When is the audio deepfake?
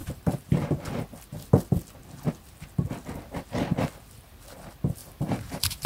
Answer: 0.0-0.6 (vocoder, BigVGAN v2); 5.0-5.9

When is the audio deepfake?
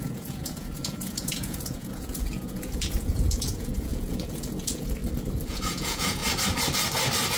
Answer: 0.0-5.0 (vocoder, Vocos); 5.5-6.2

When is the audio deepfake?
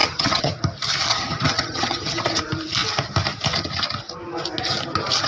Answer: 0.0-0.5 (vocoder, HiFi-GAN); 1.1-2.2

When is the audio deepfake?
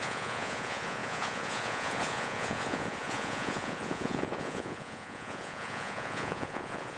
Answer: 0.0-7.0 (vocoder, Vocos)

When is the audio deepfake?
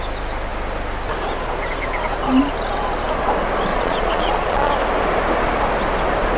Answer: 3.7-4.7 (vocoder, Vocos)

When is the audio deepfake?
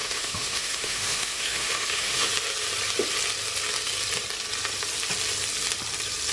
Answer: 0.0-2.3 (autoencoder, DAC-VAE)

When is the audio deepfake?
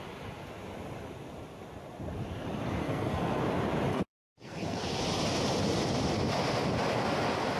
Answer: 2.8-3.4 (codec, SNAC); 3.9-5.0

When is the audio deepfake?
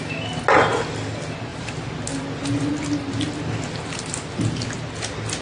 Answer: none